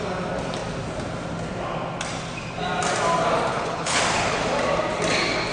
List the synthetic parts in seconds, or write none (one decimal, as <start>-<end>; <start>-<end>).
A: 3.5-4.0